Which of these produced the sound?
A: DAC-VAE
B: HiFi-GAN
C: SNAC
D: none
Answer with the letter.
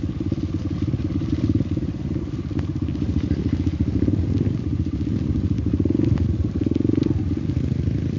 D